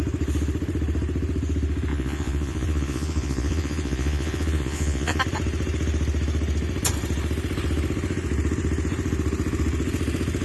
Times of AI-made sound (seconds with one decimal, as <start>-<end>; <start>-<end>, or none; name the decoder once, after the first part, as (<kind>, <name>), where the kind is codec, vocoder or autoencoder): 1.9-5.2 (vocoder, Vocos)